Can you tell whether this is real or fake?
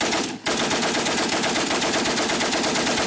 real